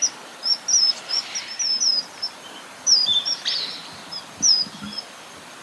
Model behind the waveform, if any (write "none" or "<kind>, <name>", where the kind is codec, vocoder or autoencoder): vocoder, BigVGAN v2